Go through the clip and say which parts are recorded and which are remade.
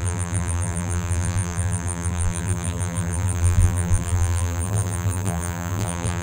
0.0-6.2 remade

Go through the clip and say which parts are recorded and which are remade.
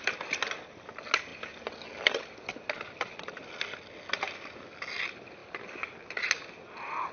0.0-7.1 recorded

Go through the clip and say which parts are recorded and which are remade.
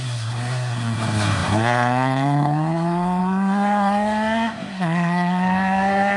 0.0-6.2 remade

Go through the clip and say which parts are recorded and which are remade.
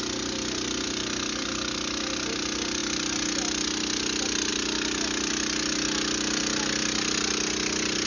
0.0-8.1 recorded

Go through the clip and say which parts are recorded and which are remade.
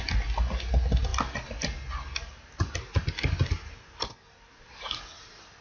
0.0-5.6 recorded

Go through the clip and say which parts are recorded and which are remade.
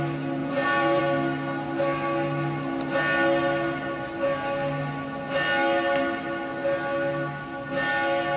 0.0-0.4 recorded; 0.4-1.0 remade; 1.0-8.4 recorded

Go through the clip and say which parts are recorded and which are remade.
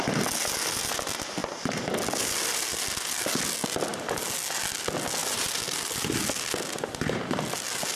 0.0-8.0 recorded